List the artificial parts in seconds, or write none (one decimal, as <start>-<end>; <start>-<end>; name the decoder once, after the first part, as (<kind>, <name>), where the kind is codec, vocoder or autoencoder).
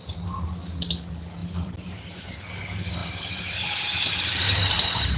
1.4-2.3 (vocoder, BigVGAN v2); 3.0-5.2